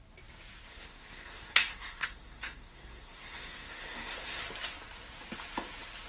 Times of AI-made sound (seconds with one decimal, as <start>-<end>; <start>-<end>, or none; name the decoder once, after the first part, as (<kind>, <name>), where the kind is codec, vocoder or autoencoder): 0.7-4.4 (codec, SNAC)